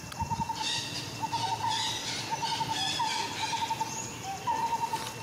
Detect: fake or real real